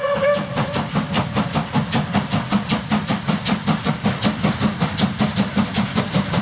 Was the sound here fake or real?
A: real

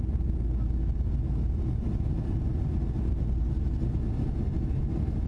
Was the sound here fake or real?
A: real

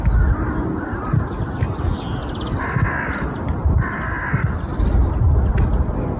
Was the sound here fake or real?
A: real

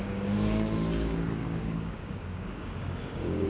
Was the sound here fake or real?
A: fake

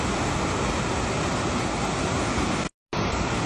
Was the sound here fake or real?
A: real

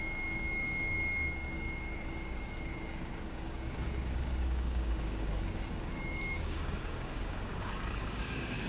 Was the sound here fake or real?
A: fake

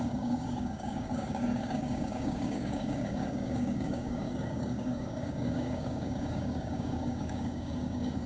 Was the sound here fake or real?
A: fake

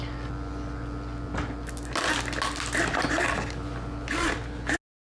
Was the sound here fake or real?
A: real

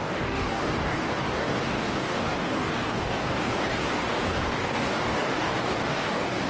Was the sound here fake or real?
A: fake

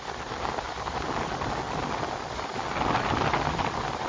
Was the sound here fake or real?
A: real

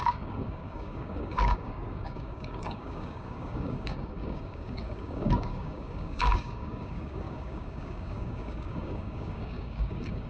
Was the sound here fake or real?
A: fake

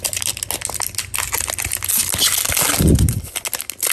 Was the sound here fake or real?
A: real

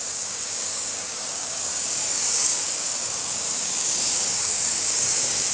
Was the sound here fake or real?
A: fake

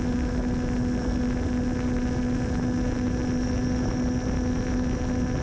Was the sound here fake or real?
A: real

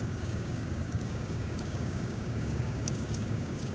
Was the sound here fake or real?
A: fake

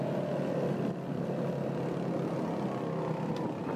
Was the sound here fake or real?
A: real